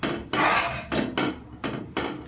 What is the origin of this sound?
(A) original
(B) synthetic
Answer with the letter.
A